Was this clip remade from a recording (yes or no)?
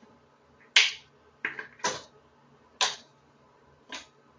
no